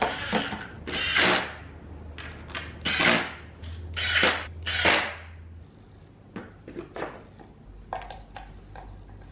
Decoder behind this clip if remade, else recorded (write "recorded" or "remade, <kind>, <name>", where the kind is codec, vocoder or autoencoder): recorded